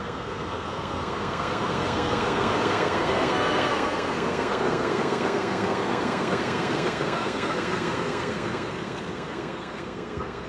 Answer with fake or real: fake